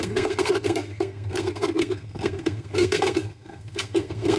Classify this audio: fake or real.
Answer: fake